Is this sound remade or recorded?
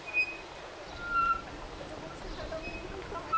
recorded